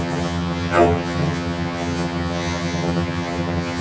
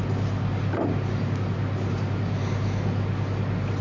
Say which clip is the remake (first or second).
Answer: first